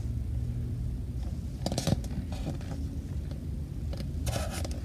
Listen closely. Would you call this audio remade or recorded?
recorded